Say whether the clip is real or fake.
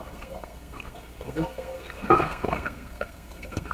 fake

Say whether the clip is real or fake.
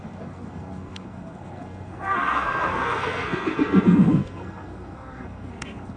fake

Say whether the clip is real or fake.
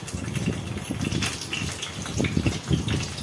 real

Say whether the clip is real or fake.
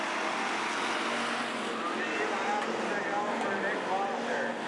real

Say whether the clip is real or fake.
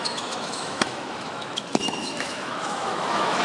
fake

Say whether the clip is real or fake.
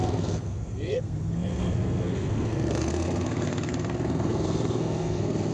fake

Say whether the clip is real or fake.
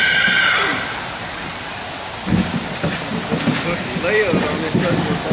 real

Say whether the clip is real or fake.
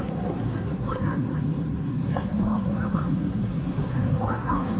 fake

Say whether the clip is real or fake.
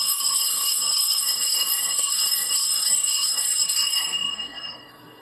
fake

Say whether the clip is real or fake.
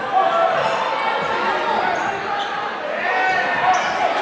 real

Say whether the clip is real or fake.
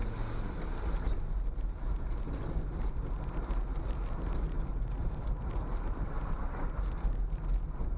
real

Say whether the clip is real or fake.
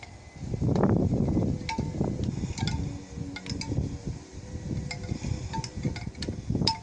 real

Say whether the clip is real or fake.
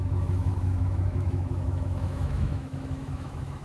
fake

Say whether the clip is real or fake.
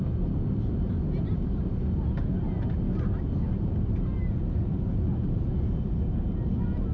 real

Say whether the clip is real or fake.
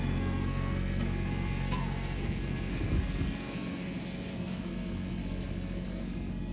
fake